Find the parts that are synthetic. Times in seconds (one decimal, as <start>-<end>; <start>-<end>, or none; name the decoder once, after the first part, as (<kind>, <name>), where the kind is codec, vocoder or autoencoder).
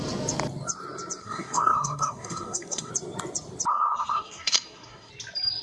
1.2-2.9 (codec, SNAC); 3.7-5.1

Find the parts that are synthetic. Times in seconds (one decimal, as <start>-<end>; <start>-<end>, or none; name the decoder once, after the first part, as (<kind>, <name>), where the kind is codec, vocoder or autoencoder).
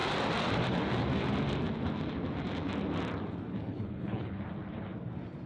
3.7-4.4 (codec, HILCodec)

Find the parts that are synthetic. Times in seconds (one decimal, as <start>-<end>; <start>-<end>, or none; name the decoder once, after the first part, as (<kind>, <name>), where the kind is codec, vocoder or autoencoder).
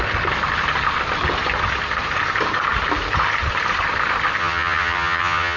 4.4-5.6 (vocoder, HiFi-GAN)